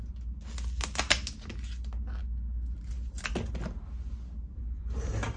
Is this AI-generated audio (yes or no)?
no